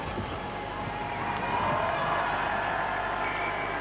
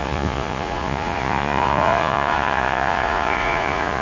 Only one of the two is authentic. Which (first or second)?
first